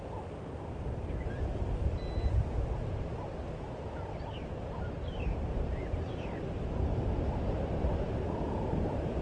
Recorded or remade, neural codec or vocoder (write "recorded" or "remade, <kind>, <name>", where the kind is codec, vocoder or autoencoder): recorded